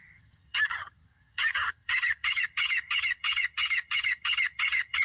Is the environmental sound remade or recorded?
remade